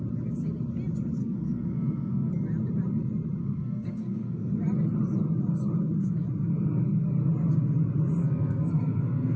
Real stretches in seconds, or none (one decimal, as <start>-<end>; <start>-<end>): 0.0-1.2; 2.3-3.4; 4.5-8.2